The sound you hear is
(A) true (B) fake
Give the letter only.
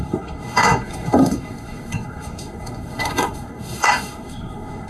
B